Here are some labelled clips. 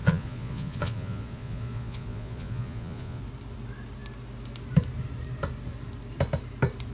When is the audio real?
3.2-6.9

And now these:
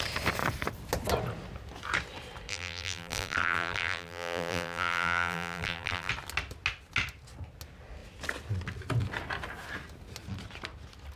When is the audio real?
0.0-2.5; 6.1-11.2

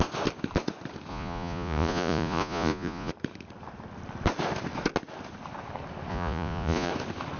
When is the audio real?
0.0-1.1; 3.1-6.1; 6.9-7.4